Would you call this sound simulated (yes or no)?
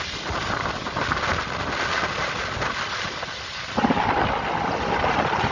no